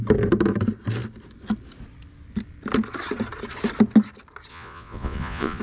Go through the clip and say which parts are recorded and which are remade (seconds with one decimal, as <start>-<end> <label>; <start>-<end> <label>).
0.0-4.5 recorded; 4.5-5.6 remade